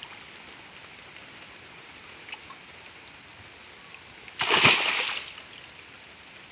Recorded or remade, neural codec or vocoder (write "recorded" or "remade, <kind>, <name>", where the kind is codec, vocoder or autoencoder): recorded